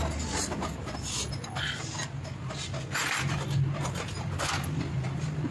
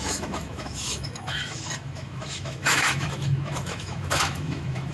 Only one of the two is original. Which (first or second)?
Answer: first